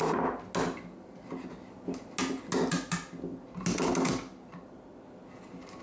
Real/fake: real